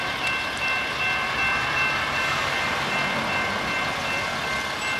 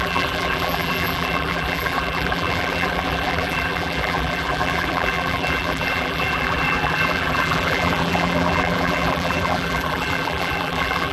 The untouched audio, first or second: first